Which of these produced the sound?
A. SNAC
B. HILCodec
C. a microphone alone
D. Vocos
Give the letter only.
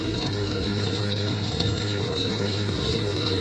A